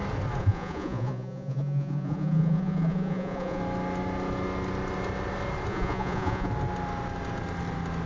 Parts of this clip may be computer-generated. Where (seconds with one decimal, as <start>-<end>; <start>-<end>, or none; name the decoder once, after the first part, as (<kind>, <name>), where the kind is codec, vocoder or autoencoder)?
0.4-3.6 (vocoder, Vocos); 5.7-6.5